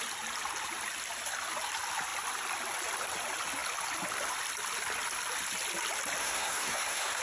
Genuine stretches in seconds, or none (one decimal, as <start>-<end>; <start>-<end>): 0.0-6.2